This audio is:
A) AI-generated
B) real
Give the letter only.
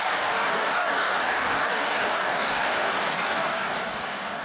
A